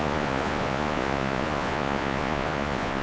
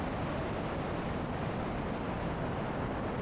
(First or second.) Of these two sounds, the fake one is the first